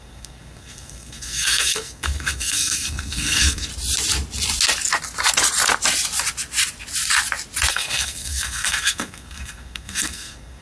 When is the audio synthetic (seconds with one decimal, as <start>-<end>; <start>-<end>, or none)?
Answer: 0.0-3.7; 7.7-10.6